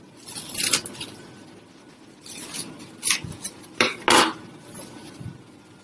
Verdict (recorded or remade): recorded